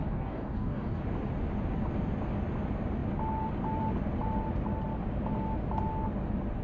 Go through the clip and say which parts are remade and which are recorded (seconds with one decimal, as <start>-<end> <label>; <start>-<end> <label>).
0.0-1.0 remade; 1.0-6.6 recorded